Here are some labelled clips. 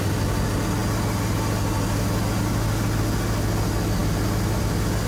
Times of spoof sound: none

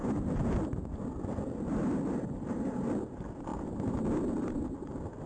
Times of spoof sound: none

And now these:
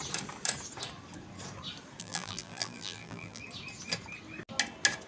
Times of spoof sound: 2.0-3.4 (vocoder, BigVGAN v2)

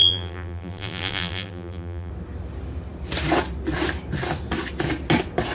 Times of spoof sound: 0.0-2.1 (vocoder, BigVGAN v2)

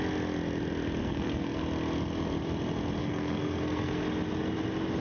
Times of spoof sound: 1.0-1.6 (codec, SNAC); 3.0-4.0

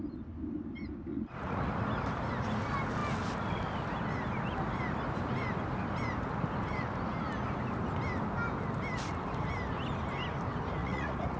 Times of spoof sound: 1.1-1.7 (vocoder, Vocos); 10.8-11.4

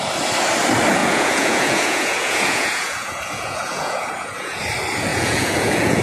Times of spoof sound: 1.0-4.6 (vocoder, Vocos); 5.1-6.0

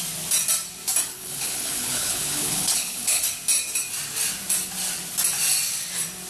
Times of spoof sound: 1.1-3.2 (codec, HILCodec)